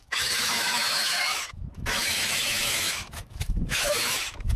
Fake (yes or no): yes